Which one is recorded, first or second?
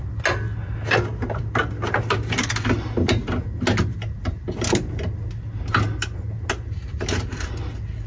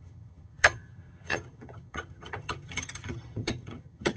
first